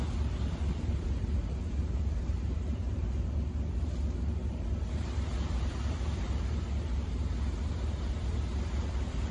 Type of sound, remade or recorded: remade